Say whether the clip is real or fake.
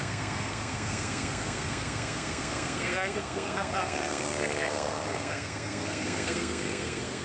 fake